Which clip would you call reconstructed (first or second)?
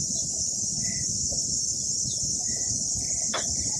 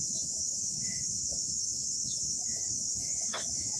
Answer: second